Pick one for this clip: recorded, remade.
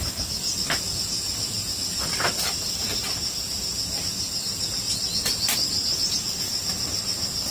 recorded